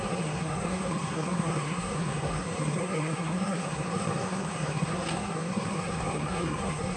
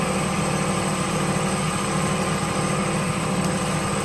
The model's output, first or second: first